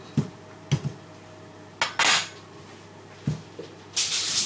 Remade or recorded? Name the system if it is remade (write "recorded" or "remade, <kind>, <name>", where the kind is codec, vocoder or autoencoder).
recorded